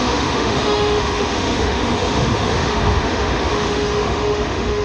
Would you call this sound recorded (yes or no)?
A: no